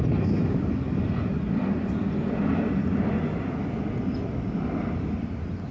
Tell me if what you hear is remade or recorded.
recorded